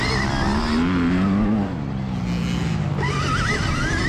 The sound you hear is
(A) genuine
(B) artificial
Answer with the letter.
A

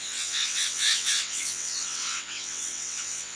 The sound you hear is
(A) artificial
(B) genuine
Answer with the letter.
A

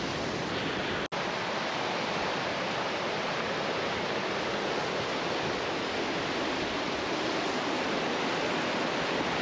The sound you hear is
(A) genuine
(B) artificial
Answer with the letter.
A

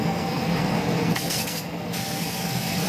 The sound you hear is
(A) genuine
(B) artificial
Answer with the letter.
B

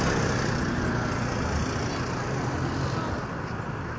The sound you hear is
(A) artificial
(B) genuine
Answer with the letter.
B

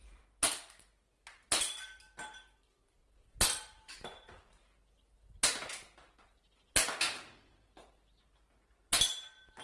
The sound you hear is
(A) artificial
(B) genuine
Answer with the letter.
B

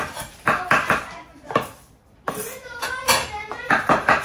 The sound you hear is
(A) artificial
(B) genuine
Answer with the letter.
B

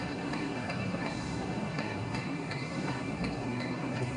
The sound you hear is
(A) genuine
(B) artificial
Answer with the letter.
B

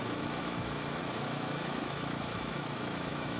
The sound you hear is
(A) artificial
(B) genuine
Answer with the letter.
A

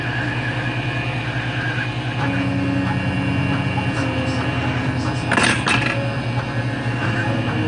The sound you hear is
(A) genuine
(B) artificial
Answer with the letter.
A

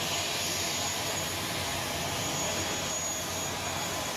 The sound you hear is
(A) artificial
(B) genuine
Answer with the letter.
B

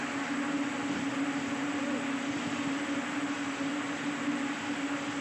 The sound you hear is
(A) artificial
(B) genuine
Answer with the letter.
B